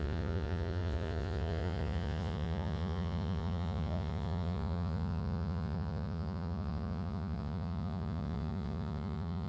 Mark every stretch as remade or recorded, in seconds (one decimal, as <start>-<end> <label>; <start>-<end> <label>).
0.0-9.5 remade